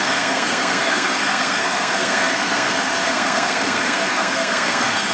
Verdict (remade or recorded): remade